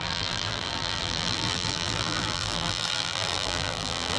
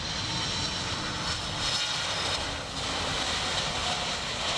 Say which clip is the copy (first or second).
first